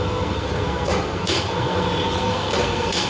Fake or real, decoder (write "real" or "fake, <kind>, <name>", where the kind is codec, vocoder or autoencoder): fake, codec, SNAC